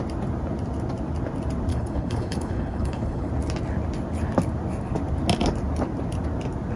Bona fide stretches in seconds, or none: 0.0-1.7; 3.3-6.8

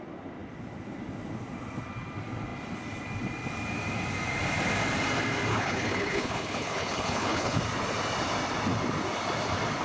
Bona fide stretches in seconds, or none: 0.0-5.5; 7.6-9.8

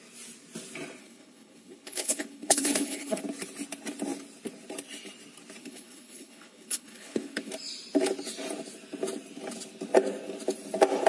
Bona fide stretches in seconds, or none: 0.0-1.0; 3.2-5.6; 7.5-11.1

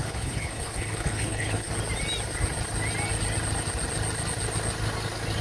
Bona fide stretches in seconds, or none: 1.7-5.4

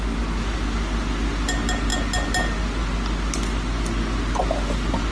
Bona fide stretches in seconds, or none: 0.0-5.1

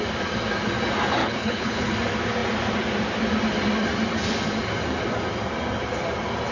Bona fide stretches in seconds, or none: 0.0-1.2; 1.9-6.5

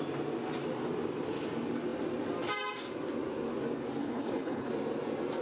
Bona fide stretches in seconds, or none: 0.0-4.0; 4.7-5.4